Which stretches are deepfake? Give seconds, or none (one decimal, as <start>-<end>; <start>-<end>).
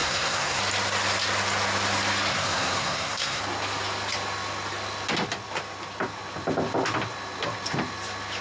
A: 0.0-0.6; 2.3-3.4